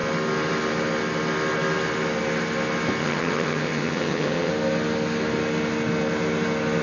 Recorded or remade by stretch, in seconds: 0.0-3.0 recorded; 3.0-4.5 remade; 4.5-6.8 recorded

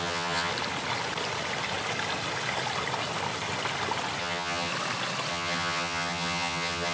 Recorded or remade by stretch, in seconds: 0.0-0.5 remade; 0.5-4.2 recorded; 4.2-4.7 remade; 4.7-5.3 recorded; 5.3-6.9 remade

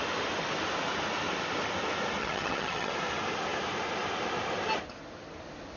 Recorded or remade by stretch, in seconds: 0.0-2.2 recorded; 2.2-2.9 remade; 2.9-5.8 recorded

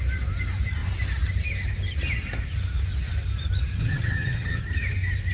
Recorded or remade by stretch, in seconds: 0.0-3.8 recorded; 3.8-4.6 remade; 4.6-5.3 recorded

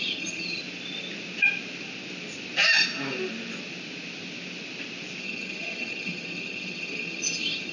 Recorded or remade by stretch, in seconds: 0.0-0.6 remade; 0.6-5.2 recorded; 5.2-7.7 remade

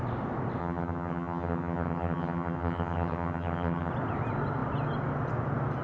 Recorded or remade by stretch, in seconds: 0.0-0.6 recorded; 0.6-3.9 remade; 3.9-5.8 recorded

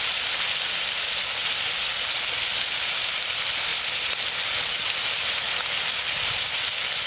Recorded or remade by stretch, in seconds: 0.0-7.1 recorded

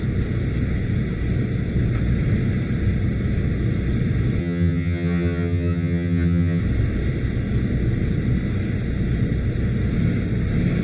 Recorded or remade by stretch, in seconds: 0.0-4.4 recorded; 4.4-6.6 remade; 6.6-10.8 recorded